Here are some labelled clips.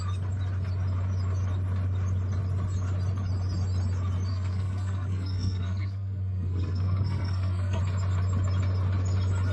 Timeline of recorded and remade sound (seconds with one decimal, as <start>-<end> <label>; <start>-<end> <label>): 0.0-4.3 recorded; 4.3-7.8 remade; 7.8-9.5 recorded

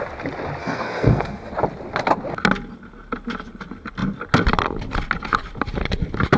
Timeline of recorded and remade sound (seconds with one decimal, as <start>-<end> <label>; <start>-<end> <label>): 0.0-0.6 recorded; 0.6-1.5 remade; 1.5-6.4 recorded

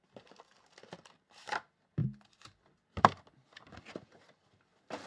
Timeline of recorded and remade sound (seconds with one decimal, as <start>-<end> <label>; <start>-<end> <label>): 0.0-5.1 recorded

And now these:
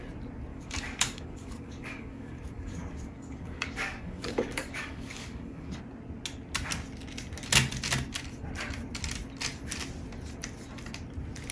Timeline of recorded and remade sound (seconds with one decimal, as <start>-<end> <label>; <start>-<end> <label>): 0.0-0.5 recorded; 0.5-5.8 remade; 5.8-11.5 recorded

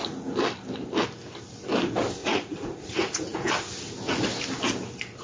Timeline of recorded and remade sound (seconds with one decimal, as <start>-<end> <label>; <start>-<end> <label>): 0.0-2.2 recorded; 2.2-3.5 remade; 3.5-5.2 recorded

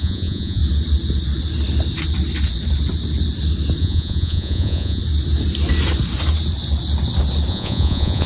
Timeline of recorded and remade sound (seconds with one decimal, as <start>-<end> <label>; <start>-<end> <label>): 0.0-0.6 remade; 0.6-3.8 recorded; 3.8-5.0 remade; 5.0-7.5 recorded; 7.5-8.3 remade

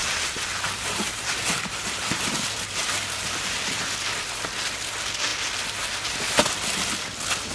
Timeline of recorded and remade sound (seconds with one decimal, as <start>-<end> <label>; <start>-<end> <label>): 0.0-3.9 remade; 3.9-7.5 recorded